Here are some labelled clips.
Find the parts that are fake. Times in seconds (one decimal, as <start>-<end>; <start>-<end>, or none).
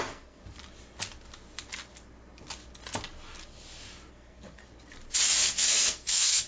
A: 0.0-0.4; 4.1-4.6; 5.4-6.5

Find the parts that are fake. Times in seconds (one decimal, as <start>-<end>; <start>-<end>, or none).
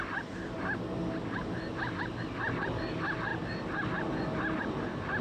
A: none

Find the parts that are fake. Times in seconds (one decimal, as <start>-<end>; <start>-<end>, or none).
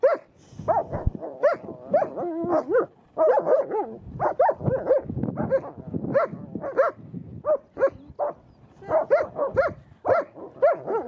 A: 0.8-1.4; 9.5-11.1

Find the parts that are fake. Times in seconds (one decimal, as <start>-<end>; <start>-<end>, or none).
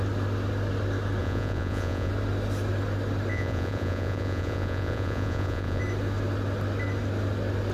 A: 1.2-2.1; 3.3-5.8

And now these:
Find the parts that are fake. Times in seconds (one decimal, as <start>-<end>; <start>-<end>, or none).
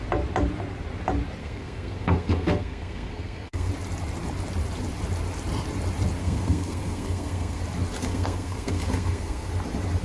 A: 1.4-3.7; 6.2-7.6; 8.0-9.5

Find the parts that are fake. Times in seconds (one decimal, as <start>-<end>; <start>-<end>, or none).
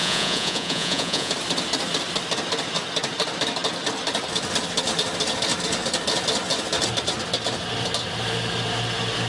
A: 0.0-1.3